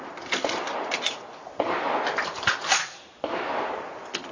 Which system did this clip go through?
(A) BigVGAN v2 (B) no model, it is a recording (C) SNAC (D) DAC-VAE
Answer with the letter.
B